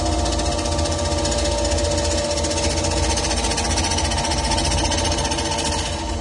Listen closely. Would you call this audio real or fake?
real